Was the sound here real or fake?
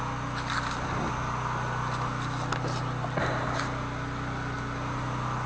real